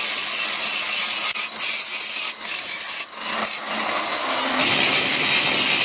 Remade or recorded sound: recorded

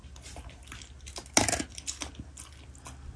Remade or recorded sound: recorded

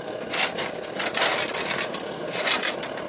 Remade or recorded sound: recorded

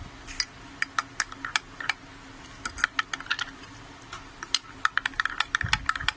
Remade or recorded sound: recorded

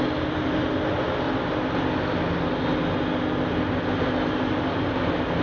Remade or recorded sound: recorded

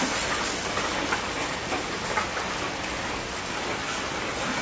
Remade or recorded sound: recorded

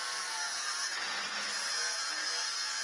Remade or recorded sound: remade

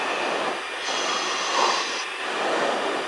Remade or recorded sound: recorded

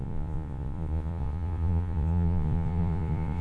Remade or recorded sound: remade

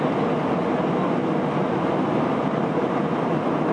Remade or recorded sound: recorded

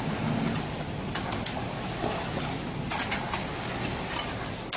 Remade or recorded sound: recorded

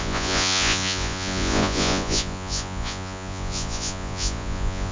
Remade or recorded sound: remade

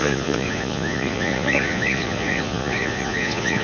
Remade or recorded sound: remade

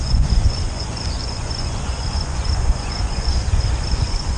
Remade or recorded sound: remade